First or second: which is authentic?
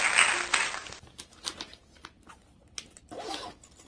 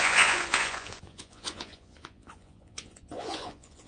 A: first